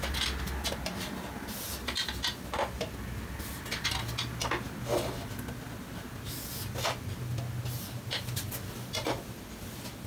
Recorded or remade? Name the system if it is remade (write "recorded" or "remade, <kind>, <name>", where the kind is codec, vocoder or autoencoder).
recorded